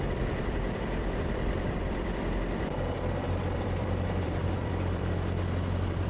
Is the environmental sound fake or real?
fake